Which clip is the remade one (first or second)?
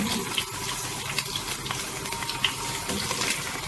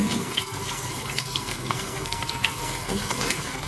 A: second